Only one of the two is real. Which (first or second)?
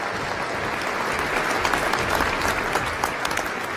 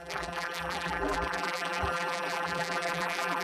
first